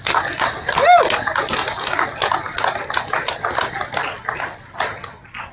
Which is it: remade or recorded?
recorded